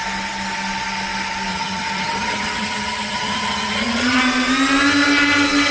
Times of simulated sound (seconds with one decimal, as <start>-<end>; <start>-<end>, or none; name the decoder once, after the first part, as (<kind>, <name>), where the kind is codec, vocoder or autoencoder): 1.5-4.2 (vocoder, HiFi-GAN)